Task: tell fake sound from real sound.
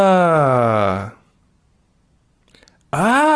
real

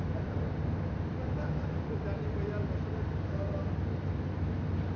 real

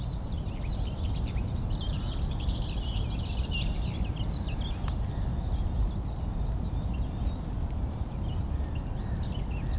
real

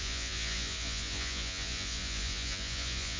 fake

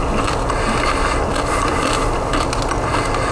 real